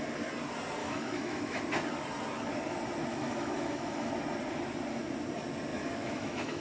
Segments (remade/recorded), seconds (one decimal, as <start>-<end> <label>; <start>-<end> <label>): 0.0-0.8 recorded; 0.8-1.6 remade; 1.6-3.1 recorded; 3.1-4.1 remade; 4.1-5.7 recorded; 5.7-6.6 remade